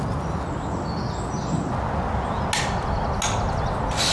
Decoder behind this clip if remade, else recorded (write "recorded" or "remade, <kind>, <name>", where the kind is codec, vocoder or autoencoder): recorded